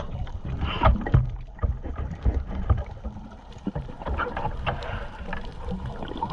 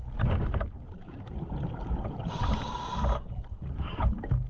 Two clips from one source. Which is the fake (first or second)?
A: first